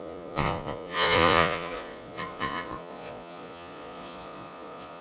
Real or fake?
fake